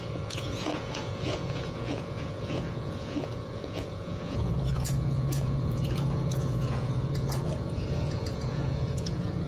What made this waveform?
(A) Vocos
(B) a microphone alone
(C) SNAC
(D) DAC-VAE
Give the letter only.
A